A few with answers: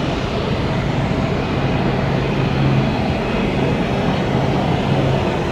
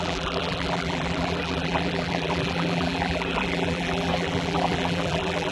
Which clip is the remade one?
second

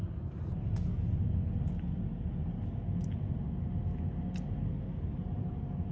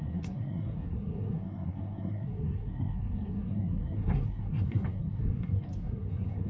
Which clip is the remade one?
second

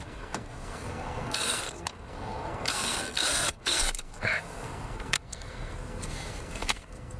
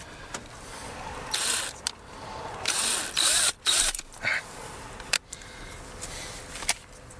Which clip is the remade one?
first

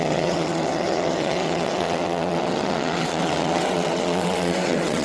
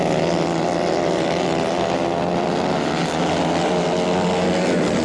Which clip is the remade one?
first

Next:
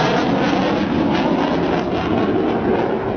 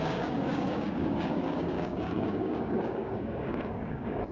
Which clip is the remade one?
second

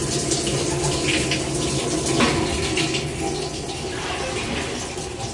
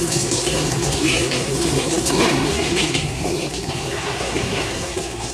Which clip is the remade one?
second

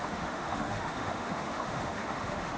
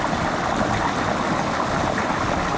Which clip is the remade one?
first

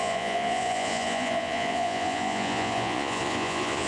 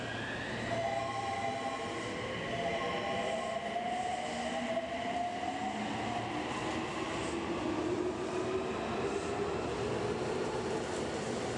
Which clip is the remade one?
first